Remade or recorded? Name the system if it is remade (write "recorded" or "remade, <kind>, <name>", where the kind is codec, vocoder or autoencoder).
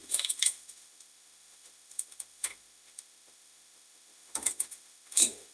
remade, autoencoder, DAC-VAE